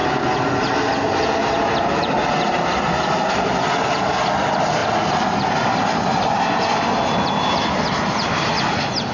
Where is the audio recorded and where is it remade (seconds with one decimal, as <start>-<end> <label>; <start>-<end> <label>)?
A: 0.0-9.1 recorded